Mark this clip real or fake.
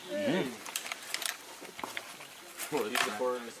real